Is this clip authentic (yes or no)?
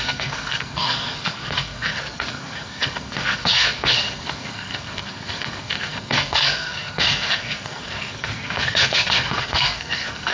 no